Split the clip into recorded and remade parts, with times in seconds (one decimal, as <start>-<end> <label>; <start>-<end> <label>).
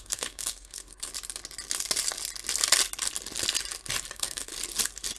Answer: 0.0-1.1 remade; 1.1-4.1 recorded; 4.1-4.5 remade; 4.5-5.2 recorded